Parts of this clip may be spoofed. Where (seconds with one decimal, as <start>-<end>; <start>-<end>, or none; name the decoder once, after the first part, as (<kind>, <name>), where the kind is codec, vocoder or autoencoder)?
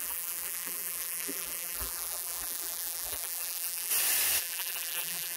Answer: 0.0-3.9 (vocoder, BigVGAN v2); 4.4-5.4